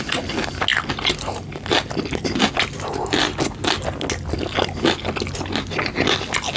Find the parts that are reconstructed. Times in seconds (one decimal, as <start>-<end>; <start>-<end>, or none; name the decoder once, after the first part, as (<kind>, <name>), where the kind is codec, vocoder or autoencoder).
none